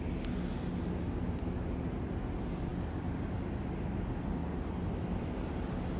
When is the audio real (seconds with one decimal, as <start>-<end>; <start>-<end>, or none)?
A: 0.0-6.0